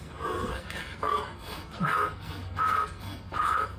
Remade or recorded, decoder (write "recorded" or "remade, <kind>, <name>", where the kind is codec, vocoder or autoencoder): remade, codec, SNAC